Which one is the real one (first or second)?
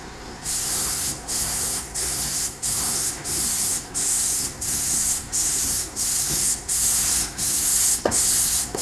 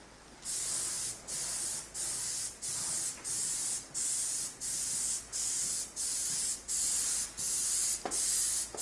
second